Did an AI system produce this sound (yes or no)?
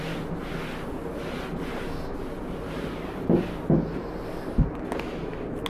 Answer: no